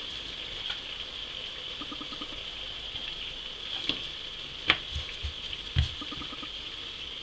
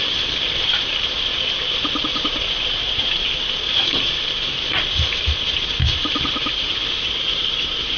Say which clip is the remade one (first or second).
second